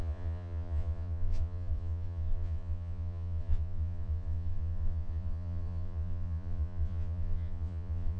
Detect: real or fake fake